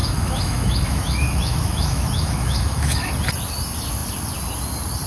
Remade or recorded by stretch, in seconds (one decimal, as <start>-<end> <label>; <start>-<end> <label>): 0.0-3.1 remade; 3.1-5.1 recorded